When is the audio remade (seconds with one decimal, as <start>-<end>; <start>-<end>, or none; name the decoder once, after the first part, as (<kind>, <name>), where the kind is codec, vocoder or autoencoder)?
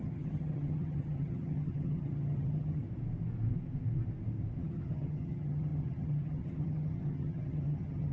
0.0-2.8 (vocoder, HiFi-GAN); 4.6-8.1